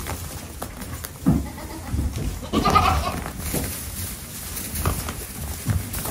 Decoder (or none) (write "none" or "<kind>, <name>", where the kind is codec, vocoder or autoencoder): none